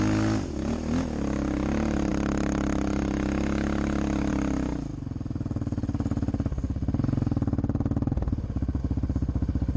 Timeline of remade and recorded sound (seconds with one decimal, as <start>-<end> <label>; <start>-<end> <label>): 0.0-9.8 recorded